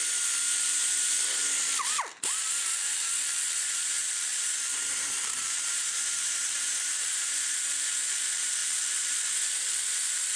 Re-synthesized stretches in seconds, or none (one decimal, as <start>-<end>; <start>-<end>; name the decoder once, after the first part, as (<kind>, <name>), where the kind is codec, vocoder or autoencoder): 4.3-7.5 (vocoder, BigVGAN v2); 8.6-9.3